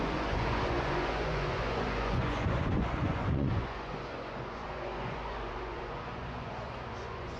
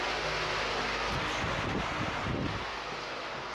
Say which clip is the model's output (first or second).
first